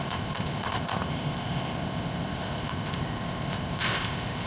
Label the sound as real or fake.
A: fake